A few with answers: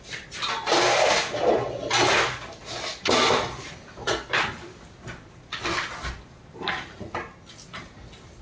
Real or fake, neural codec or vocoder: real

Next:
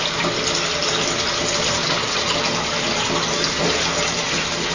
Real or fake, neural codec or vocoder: real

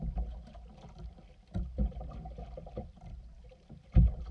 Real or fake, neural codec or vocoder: real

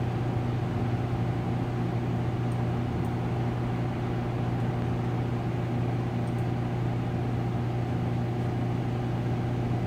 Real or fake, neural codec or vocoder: real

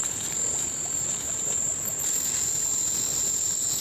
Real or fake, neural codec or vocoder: real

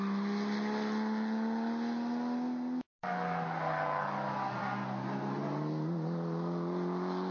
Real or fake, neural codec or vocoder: real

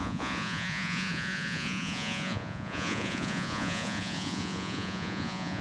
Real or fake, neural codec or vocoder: fake, vocoder, Vocos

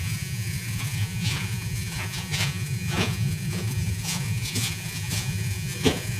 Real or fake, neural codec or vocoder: fake, vocoder, Vocos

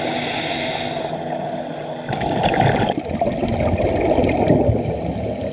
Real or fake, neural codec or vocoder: real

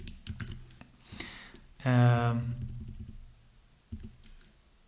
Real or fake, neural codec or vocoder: real